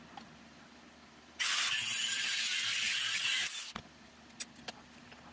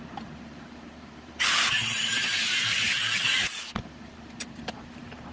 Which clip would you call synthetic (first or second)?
second